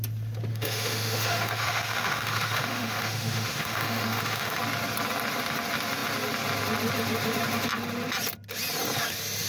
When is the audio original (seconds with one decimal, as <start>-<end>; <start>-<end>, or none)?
0.0-0.5; 4.6-9.5